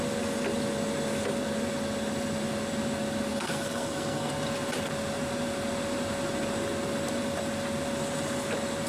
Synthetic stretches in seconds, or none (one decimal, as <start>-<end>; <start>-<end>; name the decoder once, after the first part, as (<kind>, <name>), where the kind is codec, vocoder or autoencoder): 3.3-4.3 (codec, SNAC)